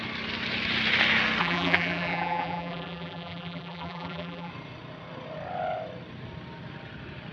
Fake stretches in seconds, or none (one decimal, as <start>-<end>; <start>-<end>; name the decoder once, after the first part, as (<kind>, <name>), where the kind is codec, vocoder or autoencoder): 1.4-4.5 (vocoder, BigVGAN v2)